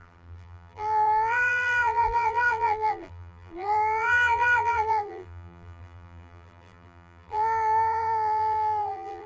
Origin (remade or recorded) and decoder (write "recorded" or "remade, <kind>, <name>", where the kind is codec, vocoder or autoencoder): remade, vocoder, BigVGAN v2